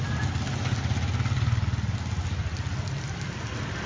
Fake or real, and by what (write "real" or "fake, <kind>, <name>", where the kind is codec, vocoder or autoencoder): real